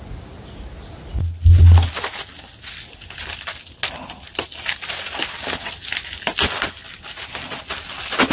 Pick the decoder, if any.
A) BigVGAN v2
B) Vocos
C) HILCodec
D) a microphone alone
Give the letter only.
D